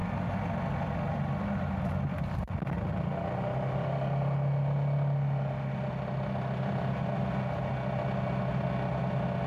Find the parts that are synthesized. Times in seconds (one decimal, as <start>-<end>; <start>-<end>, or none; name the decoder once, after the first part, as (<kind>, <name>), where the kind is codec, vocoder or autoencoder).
none